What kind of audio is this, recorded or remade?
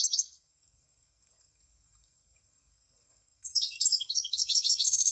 remade